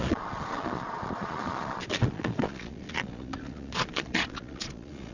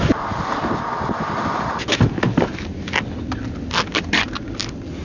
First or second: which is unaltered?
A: second